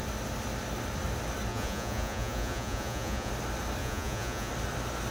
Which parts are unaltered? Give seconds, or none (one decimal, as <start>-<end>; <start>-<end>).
0.0-1.5; 3.3-3.8; 4.5-5.1